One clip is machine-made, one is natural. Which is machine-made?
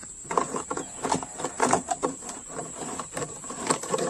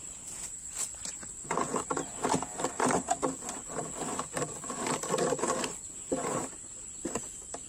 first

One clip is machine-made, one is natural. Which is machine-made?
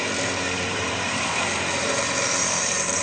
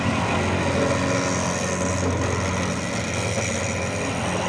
first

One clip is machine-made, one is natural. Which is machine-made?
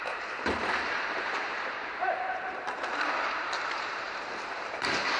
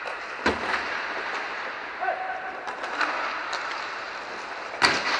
first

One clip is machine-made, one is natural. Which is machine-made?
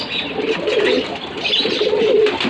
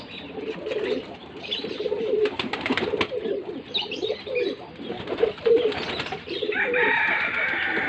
second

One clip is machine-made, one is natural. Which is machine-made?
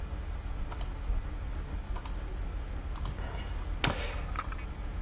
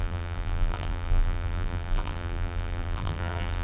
second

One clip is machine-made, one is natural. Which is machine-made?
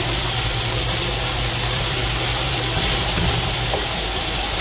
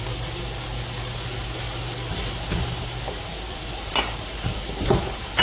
first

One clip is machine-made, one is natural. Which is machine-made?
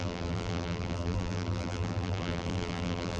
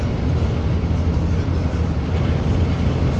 first